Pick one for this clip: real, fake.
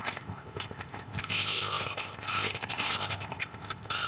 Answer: fake